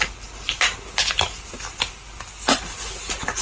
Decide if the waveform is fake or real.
real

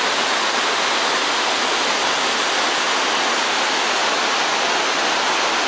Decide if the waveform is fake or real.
real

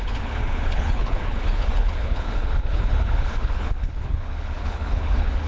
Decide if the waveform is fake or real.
fake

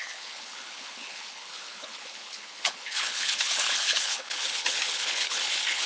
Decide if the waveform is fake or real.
fake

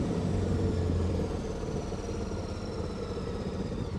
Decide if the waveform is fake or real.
fake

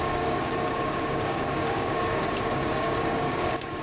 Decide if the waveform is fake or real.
fake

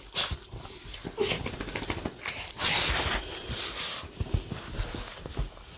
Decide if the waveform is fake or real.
real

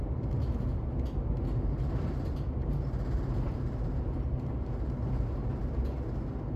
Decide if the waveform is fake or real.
real